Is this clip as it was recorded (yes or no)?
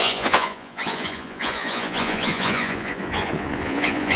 no